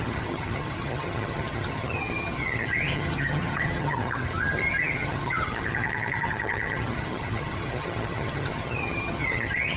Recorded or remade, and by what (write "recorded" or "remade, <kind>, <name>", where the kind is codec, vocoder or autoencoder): remade, vocoder, HiFi-GAN